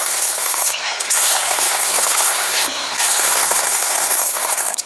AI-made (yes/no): yes